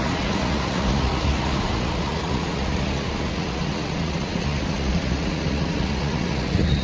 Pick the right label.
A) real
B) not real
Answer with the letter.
B